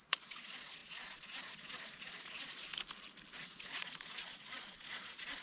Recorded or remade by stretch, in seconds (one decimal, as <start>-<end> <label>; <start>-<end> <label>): 0.0-2.7 remade; 2.7-3.4 recorded; 3.4-5.4 remade

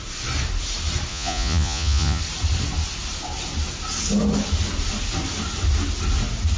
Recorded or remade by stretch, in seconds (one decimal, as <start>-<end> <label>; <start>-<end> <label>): 0.0-1.1 recorded; 1.1-2.2 remade; 2.2-6.6 recorded

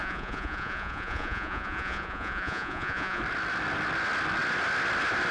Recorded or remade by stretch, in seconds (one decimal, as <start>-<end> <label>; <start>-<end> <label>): 0.0-3.2 remade; 3.2-5.3 recorded